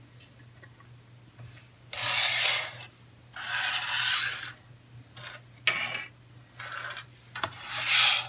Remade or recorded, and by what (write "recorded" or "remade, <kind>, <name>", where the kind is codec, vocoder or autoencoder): recorded